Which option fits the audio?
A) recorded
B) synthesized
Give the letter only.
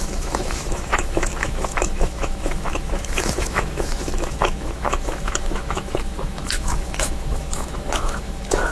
B